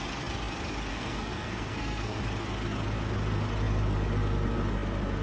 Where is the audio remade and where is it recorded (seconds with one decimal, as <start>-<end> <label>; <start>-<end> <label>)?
0.0-0.9 recorded; 0.9-2.2 remade; 2.2-5.2 recorded

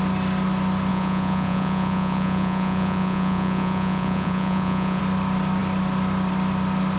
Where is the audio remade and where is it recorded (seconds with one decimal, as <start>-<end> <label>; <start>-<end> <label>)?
0.0-0.9 recorded; 0.9-5.0 remade; 5.0-7.0 recorded